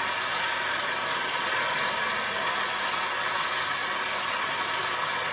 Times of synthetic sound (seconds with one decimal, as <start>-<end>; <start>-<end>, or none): none